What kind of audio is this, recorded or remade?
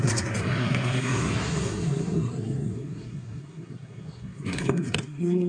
remade